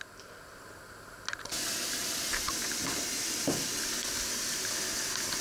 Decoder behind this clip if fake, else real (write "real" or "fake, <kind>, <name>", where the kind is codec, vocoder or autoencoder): real